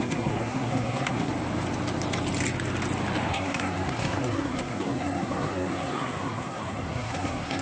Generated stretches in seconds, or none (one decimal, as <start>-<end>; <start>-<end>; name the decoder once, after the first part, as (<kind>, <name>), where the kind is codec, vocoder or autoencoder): 0.0-1.3 (codec, SNAC); 3.3-7.6